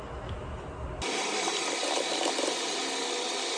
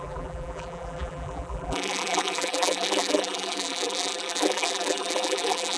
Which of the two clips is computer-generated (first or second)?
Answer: second